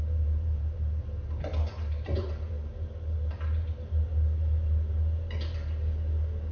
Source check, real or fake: real